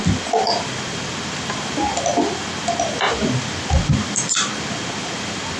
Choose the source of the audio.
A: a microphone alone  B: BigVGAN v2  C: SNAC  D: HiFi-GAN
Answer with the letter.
A